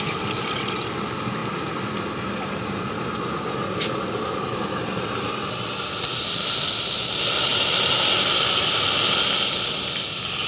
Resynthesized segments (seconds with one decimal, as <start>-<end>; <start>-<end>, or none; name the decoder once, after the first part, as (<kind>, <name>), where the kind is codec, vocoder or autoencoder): 0.0-1.4 (vocoder, BigVGAN v2); 2.3-10.5